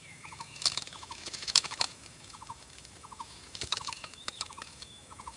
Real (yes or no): no